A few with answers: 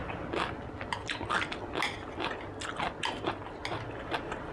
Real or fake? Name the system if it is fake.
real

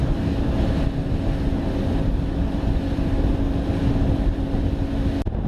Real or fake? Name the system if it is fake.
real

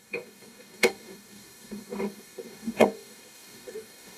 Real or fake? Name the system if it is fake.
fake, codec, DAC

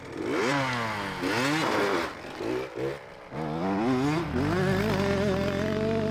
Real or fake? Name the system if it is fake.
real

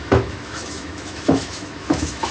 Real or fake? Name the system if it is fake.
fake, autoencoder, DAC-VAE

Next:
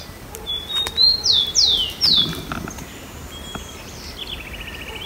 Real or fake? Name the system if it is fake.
real